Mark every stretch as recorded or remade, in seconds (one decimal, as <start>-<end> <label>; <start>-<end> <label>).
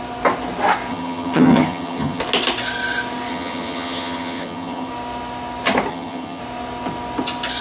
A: 0.0-0.9 recorded; 0.9-2.2 remade; 2.2-3.3 recorded; 3.3-4.9 remade; 4.9-5.9 recorded; 5.9-6.4 remade; 6.4-7.6 recorded